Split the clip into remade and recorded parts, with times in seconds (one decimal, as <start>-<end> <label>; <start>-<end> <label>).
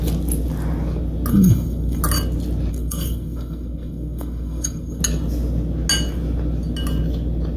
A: 0.0-1.3 recorded; 1.3-2.0 remade; 2.0-2.7 recorded; 2.7-5.0 remade; 5.0-7.6 recorded